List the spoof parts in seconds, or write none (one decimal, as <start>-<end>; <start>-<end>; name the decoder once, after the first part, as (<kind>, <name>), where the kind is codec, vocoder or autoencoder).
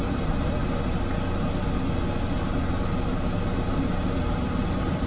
0.0-0.6 (vocoder, BigVGAN v2); 3.7-5.1